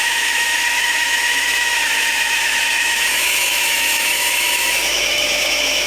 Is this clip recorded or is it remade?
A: remade